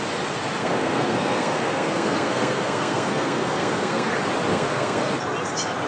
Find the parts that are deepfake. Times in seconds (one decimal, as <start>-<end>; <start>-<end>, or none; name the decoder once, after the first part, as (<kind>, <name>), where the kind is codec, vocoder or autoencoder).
0.6-4.1 (codec, SNAC); 4.5-5.1